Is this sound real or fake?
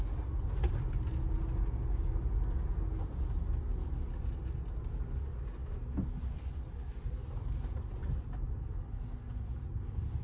real